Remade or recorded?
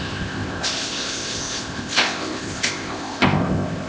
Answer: remade